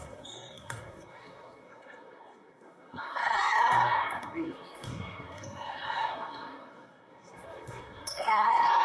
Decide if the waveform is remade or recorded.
remade